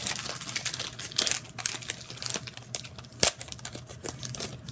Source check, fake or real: real